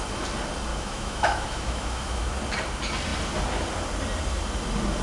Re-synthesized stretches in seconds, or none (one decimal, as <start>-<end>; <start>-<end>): 0.7-2.4